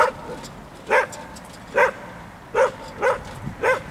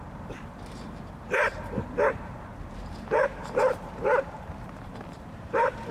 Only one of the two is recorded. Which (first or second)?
first